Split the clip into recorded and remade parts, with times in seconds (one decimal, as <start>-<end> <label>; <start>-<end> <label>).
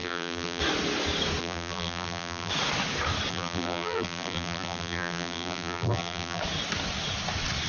0.0-0.6 remade; 0.6-1.4 recorded; 1.4-2.5 remade; 2.5-3.3 recorded; 3.3-6.4 remade; 6.4-7.7 recorded